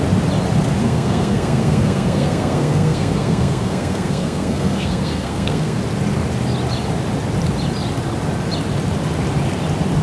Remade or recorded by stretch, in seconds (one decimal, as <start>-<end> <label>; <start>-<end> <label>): 0.0-0.8 recorded; 0.8-5.8 remade; 5.8-10.0 recorded